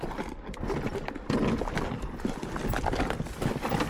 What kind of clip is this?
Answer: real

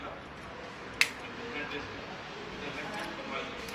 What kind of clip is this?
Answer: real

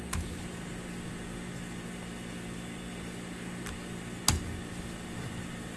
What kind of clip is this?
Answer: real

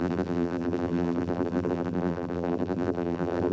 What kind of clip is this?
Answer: fake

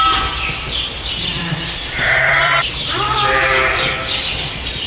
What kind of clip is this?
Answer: fake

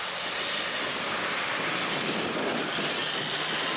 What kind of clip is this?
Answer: real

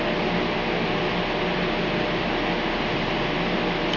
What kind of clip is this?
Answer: real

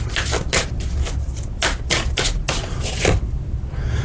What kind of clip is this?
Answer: real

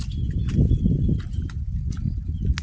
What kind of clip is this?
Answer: real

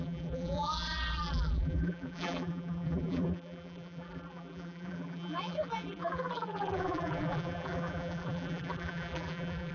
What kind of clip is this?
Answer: fake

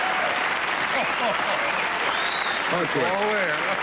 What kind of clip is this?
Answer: real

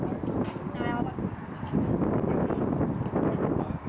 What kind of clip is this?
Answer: real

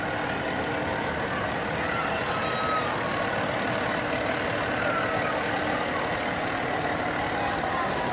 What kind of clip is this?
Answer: real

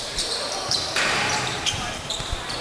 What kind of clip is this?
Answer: fake